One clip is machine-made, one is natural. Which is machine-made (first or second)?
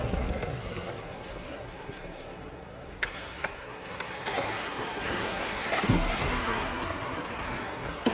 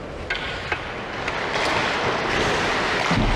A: first